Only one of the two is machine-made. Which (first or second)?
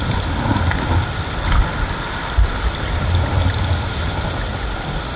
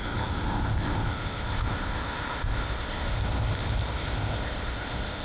second